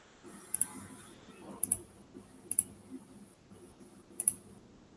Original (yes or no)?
yes